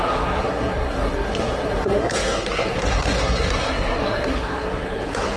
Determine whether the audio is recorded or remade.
remade